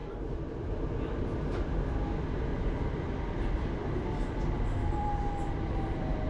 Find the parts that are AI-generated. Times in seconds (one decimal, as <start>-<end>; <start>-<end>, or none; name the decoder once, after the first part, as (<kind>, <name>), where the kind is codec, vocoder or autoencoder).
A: 0.0-1.4 (vocoder, BigVGAN v2); 2.5-6.3